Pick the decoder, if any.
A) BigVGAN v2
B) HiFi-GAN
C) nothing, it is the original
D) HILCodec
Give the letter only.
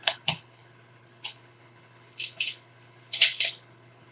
D